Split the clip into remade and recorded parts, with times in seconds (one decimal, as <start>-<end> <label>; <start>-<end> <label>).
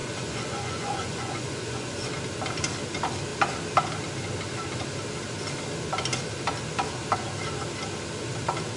0.0-2.1 remade; 2.1-8.8 recorded